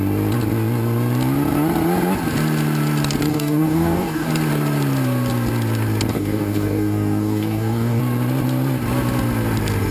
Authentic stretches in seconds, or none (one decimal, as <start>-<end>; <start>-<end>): 0.0-3.3; 4.3-6.1; 8.0-9.9